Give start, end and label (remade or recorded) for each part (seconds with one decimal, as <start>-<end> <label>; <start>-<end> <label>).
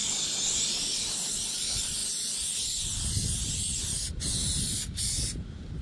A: 0.0-5.8 recorded